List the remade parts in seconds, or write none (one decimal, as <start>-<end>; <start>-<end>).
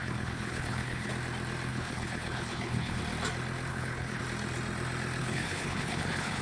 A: 0.0-1.1; 1.7-3.0; 3.7-4.2; 5.2-6.4